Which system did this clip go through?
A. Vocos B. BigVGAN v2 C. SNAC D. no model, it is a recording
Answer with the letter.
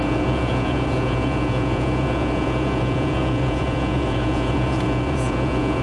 A